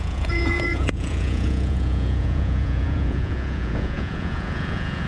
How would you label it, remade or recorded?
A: remade